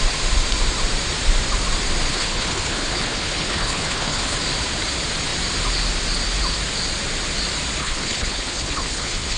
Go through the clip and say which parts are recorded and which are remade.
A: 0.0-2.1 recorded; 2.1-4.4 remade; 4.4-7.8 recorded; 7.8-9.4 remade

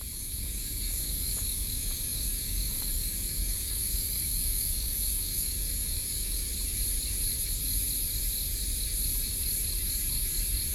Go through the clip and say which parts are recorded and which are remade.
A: 0.0-6.5 remade; 6.5-10.7 recorded